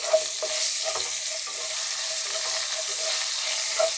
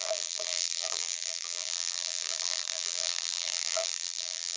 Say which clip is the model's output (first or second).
second